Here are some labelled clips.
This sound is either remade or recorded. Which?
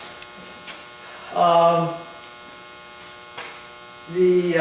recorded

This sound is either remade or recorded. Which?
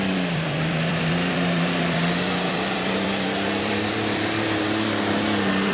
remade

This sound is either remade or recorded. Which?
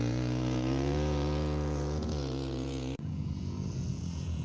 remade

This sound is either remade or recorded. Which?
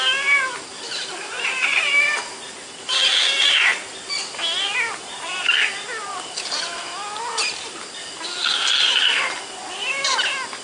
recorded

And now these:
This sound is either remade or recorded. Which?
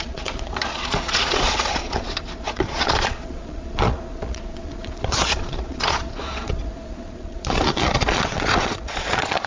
remade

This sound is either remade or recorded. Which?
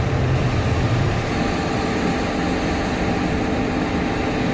recorded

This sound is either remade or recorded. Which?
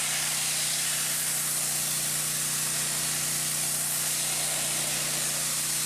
recorded